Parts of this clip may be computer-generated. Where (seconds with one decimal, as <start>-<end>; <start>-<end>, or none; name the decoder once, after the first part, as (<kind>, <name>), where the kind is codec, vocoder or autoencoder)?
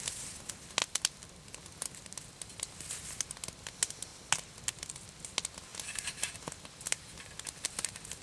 none